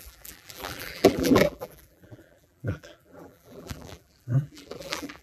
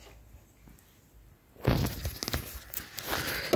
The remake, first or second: first